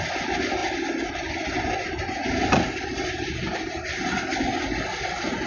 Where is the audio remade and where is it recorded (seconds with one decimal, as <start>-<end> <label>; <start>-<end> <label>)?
0.0-5.5 recorded